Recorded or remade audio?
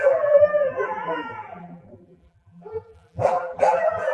remade